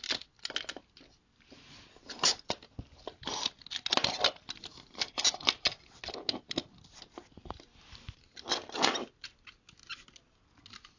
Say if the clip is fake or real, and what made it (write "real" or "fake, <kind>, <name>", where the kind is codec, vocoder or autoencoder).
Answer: real